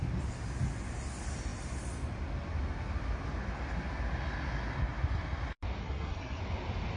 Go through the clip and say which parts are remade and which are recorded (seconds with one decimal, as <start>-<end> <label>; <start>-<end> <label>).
0.0-5.8 recorded; 5.8-6.4 remade; 6.4-7.0 recorded